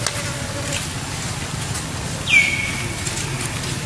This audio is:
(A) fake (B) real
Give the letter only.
B